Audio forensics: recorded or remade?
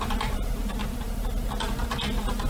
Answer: recorded